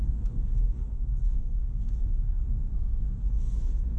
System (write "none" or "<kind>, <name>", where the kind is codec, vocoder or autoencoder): codec, SNAC